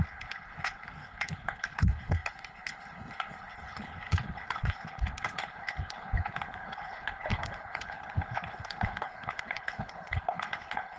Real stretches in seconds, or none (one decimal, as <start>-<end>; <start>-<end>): none